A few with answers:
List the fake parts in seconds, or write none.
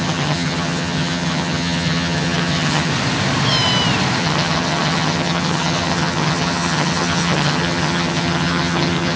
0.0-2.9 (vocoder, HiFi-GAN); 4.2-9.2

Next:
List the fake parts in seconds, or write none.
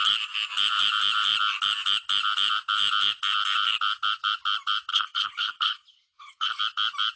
4.9-6.6 (codec, HILCodec)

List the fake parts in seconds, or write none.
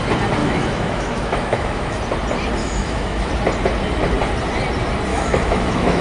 0.4-2.0 (autoencoder, DAC-VAE); 2.6-3.3; 5.1-6.0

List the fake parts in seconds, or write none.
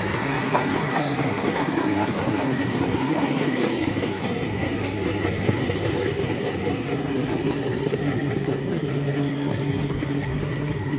0.0-11.0 (codec, SNAC)